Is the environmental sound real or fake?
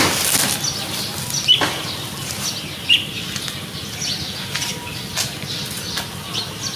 real